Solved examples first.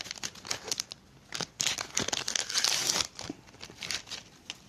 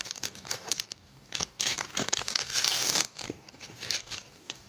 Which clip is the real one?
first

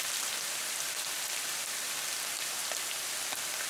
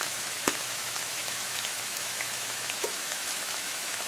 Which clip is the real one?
first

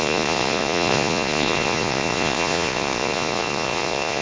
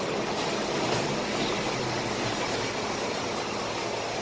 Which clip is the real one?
second